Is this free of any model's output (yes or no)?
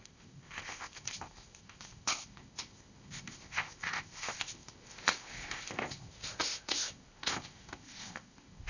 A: no